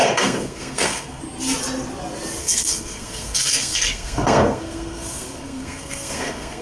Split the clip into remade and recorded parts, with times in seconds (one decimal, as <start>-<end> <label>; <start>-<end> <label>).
0.0-1.2 remade; 1.2-2.4 recorded; 2.4-6.6 remade